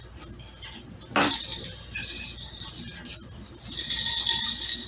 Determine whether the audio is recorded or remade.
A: recorded